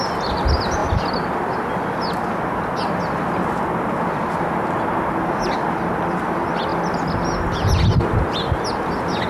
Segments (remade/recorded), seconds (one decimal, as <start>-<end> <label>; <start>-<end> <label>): 0.0-9.3 recorded